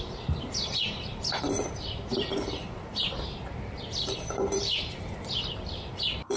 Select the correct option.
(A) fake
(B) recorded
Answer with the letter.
A